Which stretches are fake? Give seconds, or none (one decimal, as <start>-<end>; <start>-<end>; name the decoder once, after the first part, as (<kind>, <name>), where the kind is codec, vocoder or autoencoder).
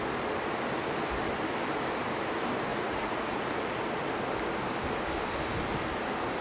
2.7-3.8 (vocoder, Vocos)